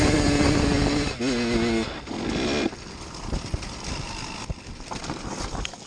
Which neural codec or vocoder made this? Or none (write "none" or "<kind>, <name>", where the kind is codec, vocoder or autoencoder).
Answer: none